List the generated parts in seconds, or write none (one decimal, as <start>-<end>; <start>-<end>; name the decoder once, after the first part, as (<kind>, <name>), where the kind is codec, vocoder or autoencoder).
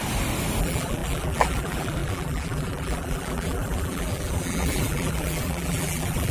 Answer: 0.6-6.3 (vocoder, BigVGAN v2)